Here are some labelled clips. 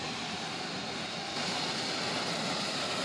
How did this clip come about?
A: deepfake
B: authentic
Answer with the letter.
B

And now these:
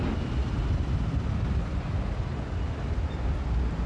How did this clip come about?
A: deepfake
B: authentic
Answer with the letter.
B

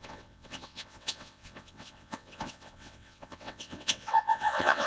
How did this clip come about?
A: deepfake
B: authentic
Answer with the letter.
A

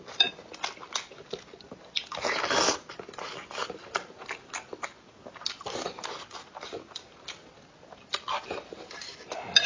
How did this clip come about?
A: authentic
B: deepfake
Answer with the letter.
A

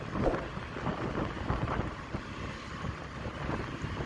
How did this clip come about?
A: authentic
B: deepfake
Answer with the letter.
A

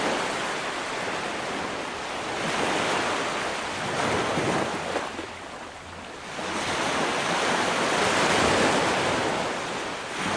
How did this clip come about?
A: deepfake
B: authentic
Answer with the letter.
B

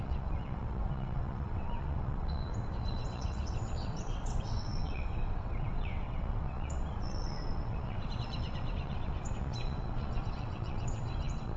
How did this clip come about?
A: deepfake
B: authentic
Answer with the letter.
A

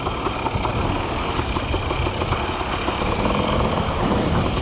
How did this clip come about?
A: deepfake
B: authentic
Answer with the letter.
B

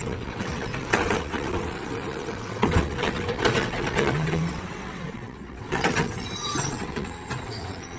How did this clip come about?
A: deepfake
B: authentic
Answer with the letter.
A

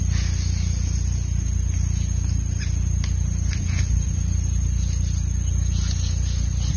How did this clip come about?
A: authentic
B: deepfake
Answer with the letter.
A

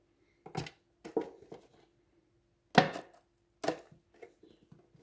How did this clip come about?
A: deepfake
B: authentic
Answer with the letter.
B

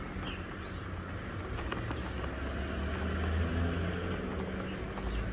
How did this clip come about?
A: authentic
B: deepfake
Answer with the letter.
A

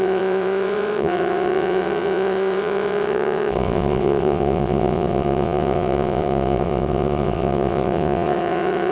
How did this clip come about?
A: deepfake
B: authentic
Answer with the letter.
A